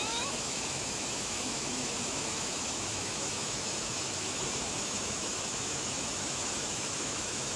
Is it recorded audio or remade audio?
remade